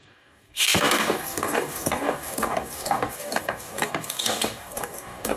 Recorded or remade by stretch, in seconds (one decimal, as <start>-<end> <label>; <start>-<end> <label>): 0.0-5.4 remade